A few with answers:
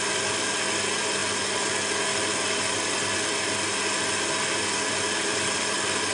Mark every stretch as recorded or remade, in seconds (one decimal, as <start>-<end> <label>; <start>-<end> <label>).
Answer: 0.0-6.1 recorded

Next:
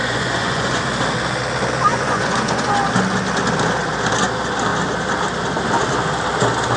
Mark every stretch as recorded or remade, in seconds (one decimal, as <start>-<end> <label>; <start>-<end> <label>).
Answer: 0.0-0.8 remade; 0.8-1.9 recorded; 1.9-2.7 remade; 2.7-6.8 recorded

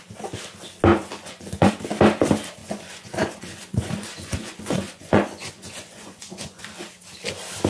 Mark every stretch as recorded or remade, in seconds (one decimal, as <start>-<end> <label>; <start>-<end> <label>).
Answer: 0.0-0.9 recorded; 0.9-1.7 remade; 1.7-2.6 recorded; 2.6-6.6 remade; 6.6-7.7 recorded

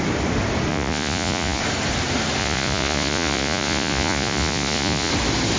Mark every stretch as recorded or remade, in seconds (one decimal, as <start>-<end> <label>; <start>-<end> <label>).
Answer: 0.0-0.7 recorded; 0.7-1.6 remade; 1.6-2.4 recorded; 2.4-5.1 remade; 5.1-5.6 recorded

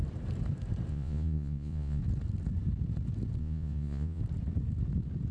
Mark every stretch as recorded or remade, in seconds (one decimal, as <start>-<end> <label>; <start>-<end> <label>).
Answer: 0.0-0.9 recorded; 0.9-2.0 remade; 2.0-3.4 recorded; 3.4-4.2 remade; 4.2-5.3 recorded

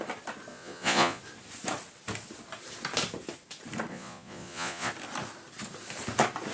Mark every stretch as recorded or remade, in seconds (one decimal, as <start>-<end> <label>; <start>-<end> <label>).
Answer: 0.0-0.5 recorded; 0.5-1.2 remade; 1.2-3.9 recorded; 3.9-4.9 remade; 4.9-6.5 recorded

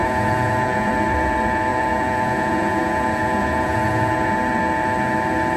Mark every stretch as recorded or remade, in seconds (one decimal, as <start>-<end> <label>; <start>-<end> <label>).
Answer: 0.0-0.9 remade; 0.9-1.7 recorded; 1.7-4.3 remade; 4.3-5.6 recorded

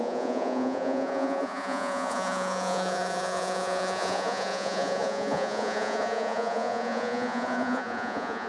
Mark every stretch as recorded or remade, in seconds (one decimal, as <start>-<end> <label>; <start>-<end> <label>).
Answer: 0.0-8.5 remade